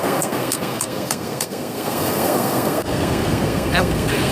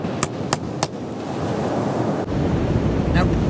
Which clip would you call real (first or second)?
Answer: second